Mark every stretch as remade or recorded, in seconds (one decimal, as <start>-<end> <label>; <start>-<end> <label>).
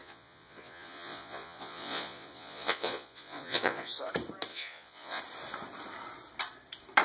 0.0-4.0 remade; 4.0-4.5 recorded; 4.5-5.2 remade; 5.2-7.0 recorded